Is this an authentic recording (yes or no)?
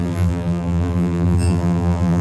no